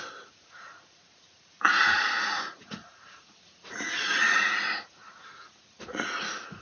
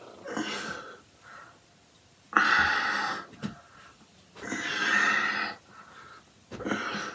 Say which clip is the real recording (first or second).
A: second